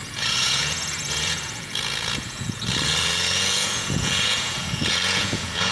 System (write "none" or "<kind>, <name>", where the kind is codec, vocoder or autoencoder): vocoder, Vocos